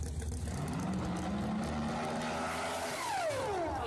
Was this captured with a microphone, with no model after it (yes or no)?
yes